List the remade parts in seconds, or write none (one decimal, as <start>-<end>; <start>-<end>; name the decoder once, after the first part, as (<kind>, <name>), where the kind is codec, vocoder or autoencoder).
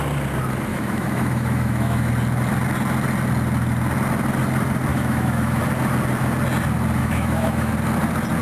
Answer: 0.7-2.1 (autoencoder, DAC-VAE); 4.9-5.6; 7.0-7.7